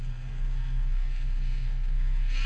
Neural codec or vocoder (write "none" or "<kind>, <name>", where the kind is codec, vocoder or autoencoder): codec, SNAC